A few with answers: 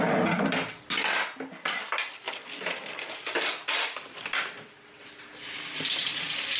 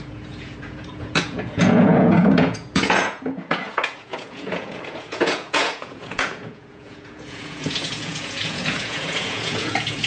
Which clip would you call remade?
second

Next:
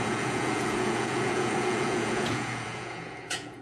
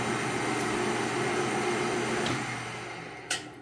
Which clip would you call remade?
first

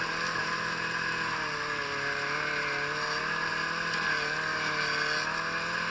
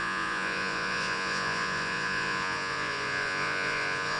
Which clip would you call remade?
second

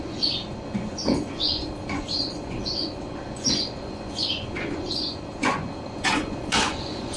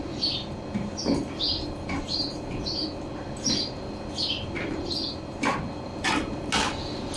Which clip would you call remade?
first